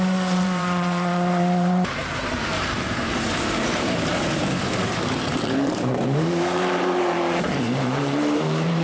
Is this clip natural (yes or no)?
no